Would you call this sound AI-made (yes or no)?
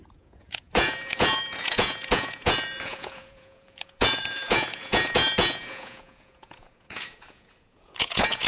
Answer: yes